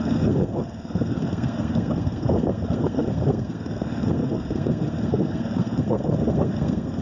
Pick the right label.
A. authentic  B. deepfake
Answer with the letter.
B